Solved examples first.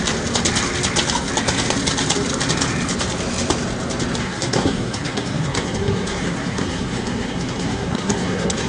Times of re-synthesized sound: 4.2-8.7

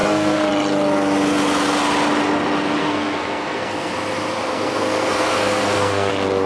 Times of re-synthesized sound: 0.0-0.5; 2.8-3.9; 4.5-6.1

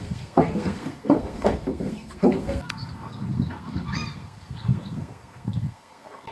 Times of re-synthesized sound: 0.0-6.3

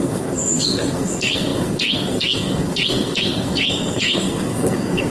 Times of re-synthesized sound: 0.0-5.1

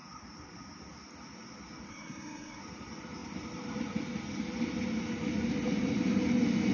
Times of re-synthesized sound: 1.9-2.6

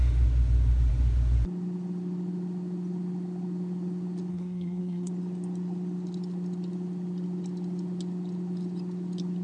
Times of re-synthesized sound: 4.3-5.1

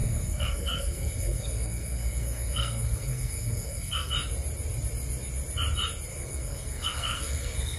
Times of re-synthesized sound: 0.0-4.1; 6.1-7.8